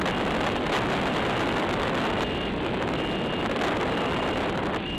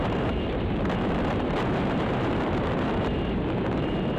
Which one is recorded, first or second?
first